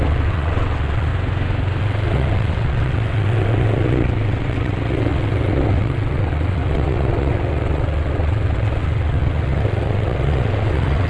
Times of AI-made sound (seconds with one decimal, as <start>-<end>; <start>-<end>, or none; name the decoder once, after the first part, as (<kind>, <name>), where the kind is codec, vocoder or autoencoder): 0.0-1.1 (vocoder, WaveNeXt); 1.8-11.1